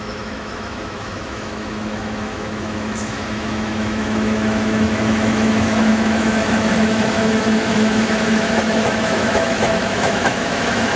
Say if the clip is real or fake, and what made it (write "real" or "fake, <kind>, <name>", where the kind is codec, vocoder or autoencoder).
fake, autoencoder, DAC-VAE